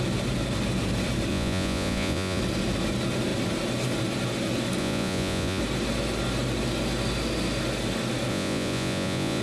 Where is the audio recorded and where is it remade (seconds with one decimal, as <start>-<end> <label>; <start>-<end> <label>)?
0.0-1.3 recorded; 1.3-2.4 remade; 2.4-4.8 recorded; 4.8-5.6 remade; 5.6-8.3 recorded; 8.3-9.4 remade